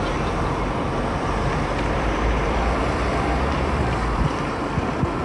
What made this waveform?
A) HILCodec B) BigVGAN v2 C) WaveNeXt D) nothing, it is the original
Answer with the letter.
B